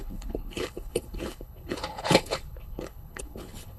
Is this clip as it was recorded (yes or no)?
no